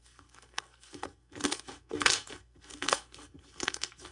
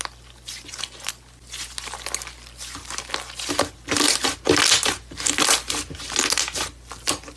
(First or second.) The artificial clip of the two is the first